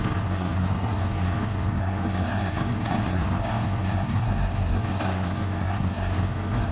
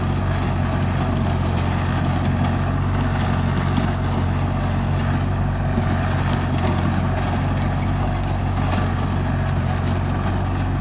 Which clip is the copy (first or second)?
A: first